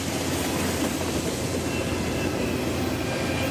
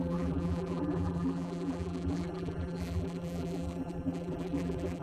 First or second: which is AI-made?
second